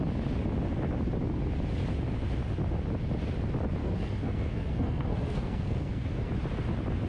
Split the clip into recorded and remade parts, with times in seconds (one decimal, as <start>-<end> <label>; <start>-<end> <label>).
0.0-3.8 recorded; 3.8-6.3 remade; 6.3-7.1 recorded